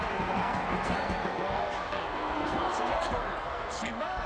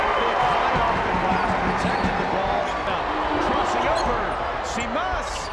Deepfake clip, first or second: first